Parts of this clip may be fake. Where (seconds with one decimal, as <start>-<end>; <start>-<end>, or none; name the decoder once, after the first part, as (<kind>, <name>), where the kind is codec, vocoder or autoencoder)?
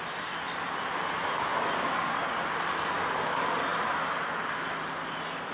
0.0-1.5 (vocoder, BigVGAN v2); 2.5-3.7; 4.3-5.5